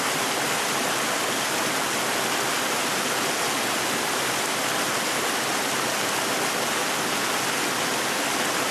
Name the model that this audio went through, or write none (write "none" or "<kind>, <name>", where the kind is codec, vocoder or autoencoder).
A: none